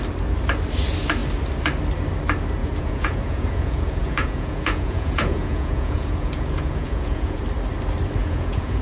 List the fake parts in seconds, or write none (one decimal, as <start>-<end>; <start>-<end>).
2.6-7.4; 8.2-8.8